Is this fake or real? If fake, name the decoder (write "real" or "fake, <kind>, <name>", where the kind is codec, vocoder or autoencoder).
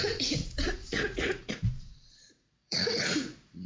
fake, vocoder, Vocos